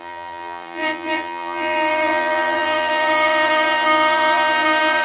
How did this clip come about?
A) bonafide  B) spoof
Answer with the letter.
B